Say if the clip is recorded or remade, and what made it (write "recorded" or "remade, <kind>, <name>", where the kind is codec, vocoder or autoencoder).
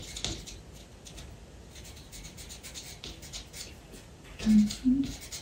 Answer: recorded